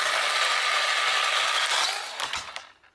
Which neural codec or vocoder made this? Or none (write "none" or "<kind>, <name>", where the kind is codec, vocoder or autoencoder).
none